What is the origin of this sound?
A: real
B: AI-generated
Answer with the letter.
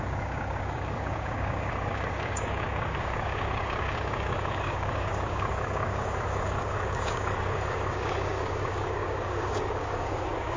B